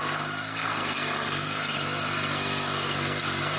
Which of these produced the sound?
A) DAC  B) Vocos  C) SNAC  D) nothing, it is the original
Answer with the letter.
C